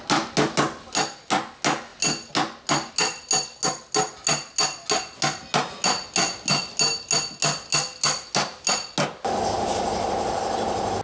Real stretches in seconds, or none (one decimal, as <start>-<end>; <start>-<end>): 0.0-11.0